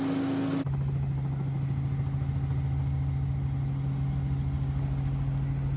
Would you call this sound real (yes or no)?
yes